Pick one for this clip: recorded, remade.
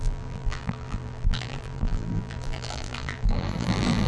remade